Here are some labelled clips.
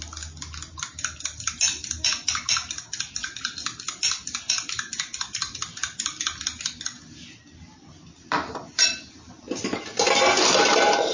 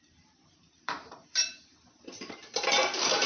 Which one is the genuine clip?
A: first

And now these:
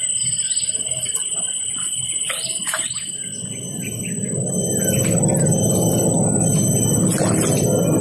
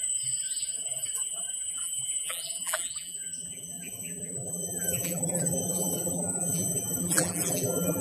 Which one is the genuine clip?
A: first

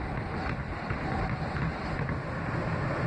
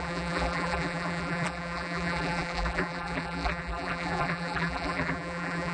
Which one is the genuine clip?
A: first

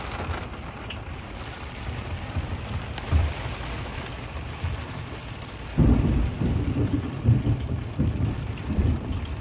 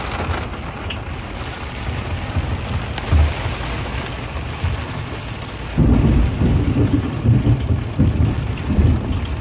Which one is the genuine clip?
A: second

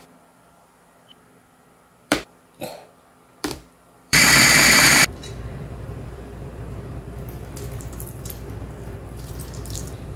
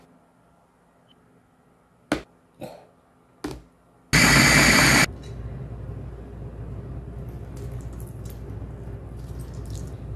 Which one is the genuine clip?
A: second